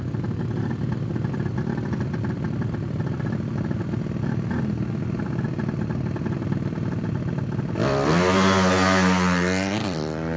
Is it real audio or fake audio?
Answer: fake